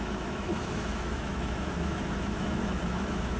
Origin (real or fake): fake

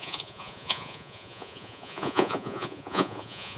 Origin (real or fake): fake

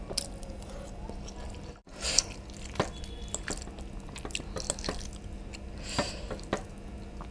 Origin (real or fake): real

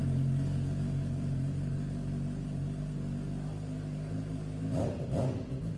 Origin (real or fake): real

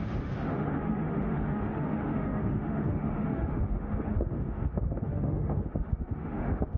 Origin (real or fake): fake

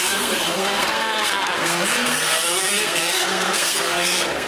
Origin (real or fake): fake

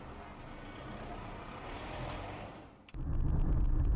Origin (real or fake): real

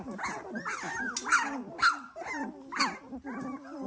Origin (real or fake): real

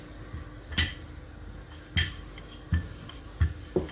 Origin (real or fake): real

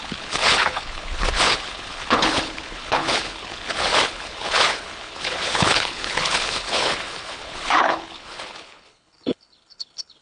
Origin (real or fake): fake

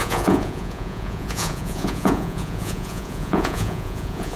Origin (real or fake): fake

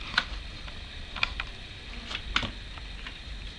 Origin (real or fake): real